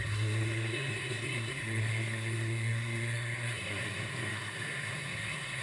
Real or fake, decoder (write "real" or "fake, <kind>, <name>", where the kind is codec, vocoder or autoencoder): fake, codec, SNAC